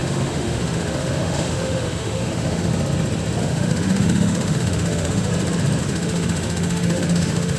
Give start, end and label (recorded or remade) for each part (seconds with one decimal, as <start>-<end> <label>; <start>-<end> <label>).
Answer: 0.0-2.7 remade; 2.7-3.4 recorded; 3.4-5.3 remade; 5.3-5.8 recorded; 5.8-7.6 remade